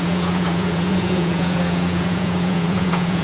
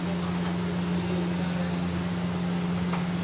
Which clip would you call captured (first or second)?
second